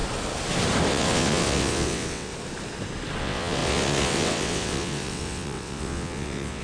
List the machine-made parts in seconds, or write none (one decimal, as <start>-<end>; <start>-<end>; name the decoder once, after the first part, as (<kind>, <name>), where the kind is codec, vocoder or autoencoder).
0.9-2.3 (vocoder, WaveNeXt); 3.2-6.6